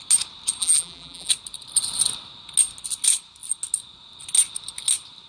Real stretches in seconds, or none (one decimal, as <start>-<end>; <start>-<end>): 0.0-0.6; 1.3-5.3